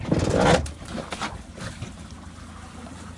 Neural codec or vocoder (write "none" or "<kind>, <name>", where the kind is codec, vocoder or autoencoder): none